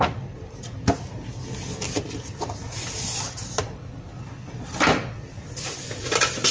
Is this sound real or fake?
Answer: real